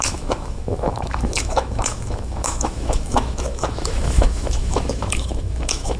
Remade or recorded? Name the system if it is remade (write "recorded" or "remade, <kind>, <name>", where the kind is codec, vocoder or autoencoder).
remade, autoencoder, DAC-VAE